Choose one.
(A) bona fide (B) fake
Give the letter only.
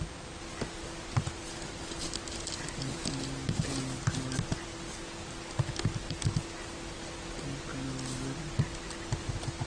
A